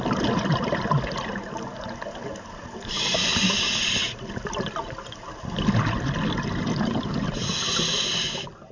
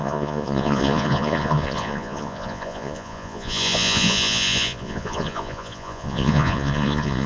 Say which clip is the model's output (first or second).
second